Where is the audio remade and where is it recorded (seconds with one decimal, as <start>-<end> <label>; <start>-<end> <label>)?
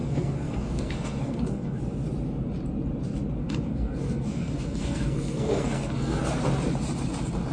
0.0-1.8 remade; 1.8-3.4 recorded; 3.4-6.2 remade; 6.2-7.5 recorded